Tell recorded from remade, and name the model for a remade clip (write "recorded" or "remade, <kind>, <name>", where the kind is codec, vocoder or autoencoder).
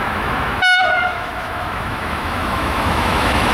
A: remade, autoencoder, DAC-VAE